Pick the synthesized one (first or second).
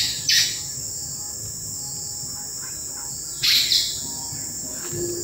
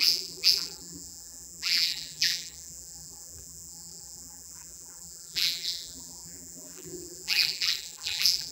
second